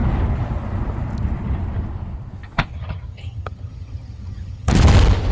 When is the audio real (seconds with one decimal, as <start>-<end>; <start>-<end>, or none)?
0.0-2.7; 4.7-5.3